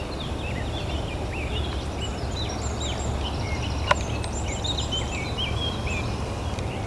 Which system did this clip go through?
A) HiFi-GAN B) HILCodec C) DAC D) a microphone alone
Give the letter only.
D